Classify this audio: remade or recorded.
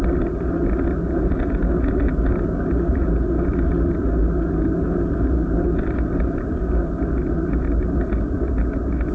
recorded